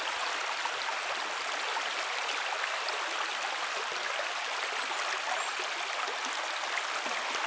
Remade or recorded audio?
recorded